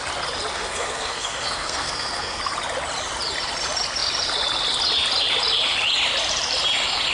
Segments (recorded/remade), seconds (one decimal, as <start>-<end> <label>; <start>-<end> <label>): 0.0-0.5 recorded; 0.5-2.4 remade; 2.4-7.1 recorded